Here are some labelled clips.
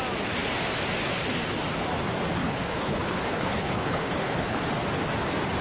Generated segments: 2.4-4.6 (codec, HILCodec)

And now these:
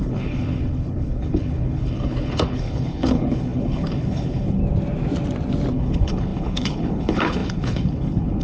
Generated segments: 0.0-4.6 (codec, HILCodec); 5.7-8.4

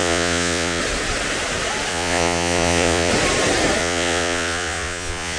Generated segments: 0.0-0.8 (vocoder, Vocos); 1.9-3.1; 3.8-5.4